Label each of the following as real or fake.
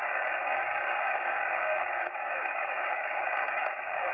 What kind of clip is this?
fake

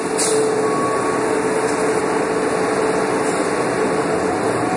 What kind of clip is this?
real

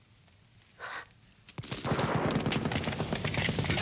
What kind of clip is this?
real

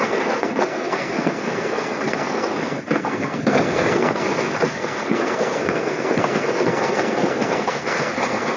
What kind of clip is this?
fake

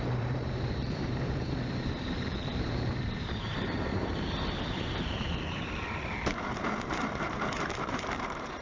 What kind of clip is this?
fake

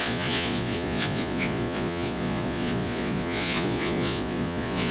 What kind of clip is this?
fake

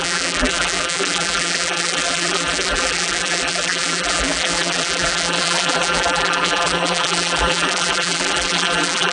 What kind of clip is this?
fake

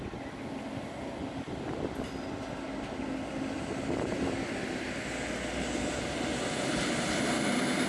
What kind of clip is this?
real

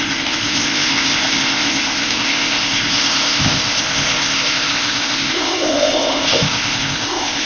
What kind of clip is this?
fake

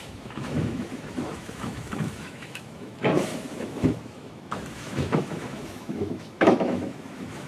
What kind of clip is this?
fake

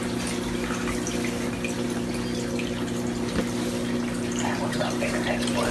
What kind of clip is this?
real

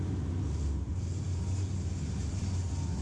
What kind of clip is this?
real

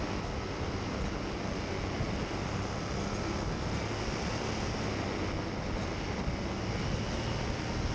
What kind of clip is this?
real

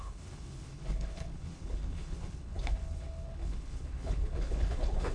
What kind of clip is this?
fake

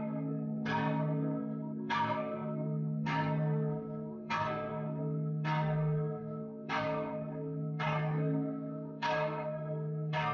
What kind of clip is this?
fake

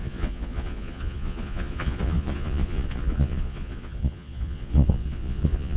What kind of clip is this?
fake